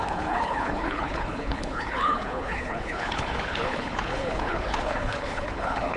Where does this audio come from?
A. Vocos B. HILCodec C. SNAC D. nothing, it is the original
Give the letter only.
B